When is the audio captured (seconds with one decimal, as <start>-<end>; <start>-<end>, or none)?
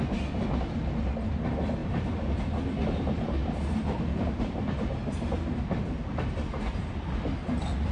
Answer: 0.0-1.8; 2.4-3.4; 6.3-7.9